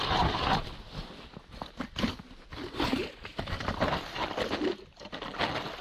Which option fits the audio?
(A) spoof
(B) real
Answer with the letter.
B